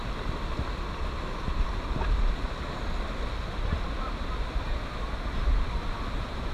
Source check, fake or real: real